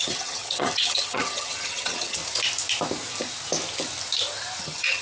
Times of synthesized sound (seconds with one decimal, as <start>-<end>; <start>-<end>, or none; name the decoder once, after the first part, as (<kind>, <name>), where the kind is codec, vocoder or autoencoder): 0.0-2.2 (vocoder, HiFi-GAN); 4.6-5.0

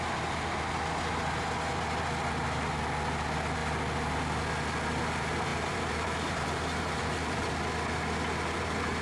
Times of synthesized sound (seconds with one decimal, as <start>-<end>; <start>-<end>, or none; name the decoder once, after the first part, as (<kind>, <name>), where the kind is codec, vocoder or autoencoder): 5.5-7.5 (vocoder, BigVGAN v2)

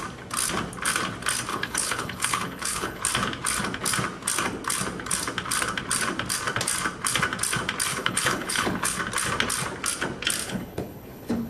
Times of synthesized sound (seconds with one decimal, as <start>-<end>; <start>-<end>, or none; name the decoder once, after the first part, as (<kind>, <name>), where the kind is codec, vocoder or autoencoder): 1.5-3.0 (codec, HILCodec); 7.9-9.0; 10.4-11.5

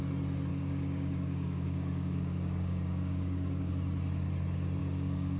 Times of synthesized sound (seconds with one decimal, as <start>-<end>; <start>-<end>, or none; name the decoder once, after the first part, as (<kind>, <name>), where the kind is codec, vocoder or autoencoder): 0.5-3.7 (codec, DAC); 4.8-5.4

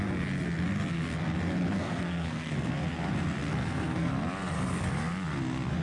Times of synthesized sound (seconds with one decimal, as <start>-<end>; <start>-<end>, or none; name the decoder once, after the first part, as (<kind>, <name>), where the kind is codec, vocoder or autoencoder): 1.8-2.7 (codec, SNAC); 3.6-4.1

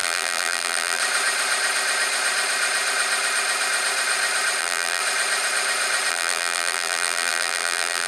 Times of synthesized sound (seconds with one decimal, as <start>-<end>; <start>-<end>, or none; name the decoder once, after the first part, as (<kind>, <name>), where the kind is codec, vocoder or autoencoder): 0.0-1.0 (vocoder, BigVGAN v2); 4.6-5.0; 6.1-8.1